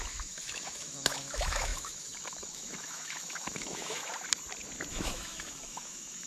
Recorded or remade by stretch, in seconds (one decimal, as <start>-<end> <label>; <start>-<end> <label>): 0.0-4.1 remade; 4.1-4.9 recorded; 4.9-6.3 remade